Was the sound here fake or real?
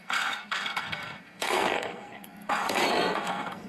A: fake